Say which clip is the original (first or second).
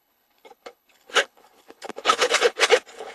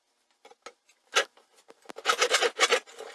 second